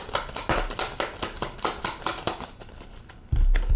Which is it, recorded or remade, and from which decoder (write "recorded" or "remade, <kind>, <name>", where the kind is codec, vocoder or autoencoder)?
recorded